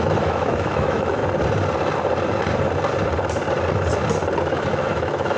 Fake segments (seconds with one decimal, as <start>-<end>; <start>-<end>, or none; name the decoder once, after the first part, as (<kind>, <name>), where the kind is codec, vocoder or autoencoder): 0.0-1.2 (autoencoder, DAC-VAE); 4.4-5.4